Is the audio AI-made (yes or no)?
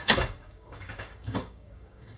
yes